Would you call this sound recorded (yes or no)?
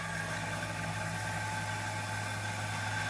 yes